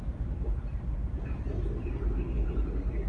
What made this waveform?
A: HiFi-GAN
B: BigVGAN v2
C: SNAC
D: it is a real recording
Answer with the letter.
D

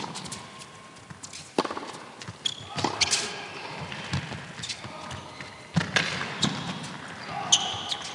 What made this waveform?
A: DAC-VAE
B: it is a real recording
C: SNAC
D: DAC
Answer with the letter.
B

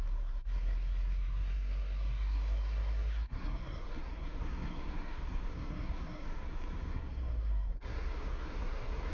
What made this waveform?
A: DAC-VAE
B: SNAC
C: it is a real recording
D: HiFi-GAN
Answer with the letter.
B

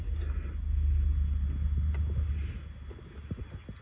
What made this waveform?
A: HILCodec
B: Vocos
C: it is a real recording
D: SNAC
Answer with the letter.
C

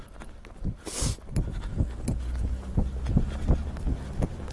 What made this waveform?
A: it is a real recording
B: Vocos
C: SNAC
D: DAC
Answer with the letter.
A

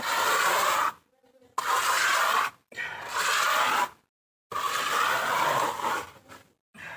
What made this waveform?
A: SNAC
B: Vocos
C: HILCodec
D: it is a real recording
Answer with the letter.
D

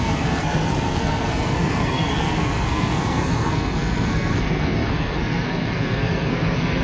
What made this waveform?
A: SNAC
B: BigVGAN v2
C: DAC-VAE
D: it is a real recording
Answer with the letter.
A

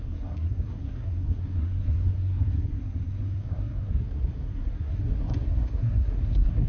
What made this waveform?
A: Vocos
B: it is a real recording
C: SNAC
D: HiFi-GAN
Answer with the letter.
C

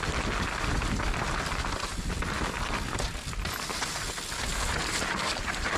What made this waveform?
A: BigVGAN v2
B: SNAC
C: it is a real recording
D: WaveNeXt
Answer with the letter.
C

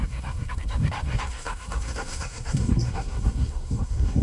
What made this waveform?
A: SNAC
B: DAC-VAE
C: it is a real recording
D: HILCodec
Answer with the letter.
A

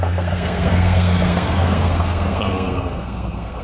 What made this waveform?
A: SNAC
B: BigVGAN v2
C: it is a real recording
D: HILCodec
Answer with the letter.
A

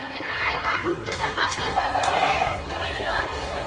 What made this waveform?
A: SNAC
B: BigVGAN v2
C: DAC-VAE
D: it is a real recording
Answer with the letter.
A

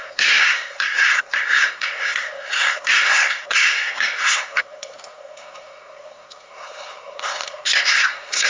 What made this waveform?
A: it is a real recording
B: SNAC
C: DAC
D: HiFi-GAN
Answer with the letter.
B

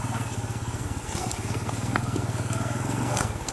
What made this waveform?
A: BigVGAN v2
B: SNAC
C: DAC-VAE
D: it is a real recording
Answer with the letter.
B